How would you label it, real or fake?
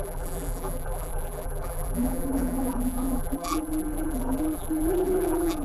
fake